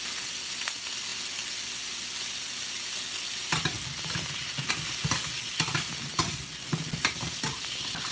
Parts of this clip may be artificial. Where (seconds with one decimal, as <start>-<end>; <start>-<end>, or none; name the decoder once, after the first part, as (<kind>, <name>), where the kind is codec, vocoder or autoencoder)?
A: none